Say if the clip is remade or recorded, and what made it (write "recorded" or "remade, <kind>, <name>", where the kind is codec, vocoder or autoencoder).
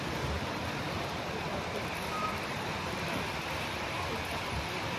remade, vocoder, BigVGAN v2